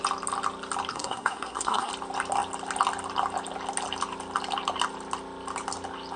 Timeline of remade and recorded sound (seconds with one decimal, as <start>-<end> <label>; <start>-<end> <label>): 0.0-0.9 recorded; 0.9-1.9 remade; 1.9-6.2 recorded